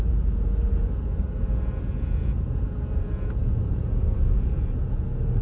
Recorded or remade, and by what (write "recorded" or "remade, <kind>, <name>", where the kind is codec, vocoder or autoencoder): remade, vocoder, Vocos